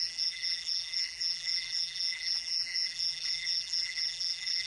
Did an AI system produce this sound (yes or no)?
yes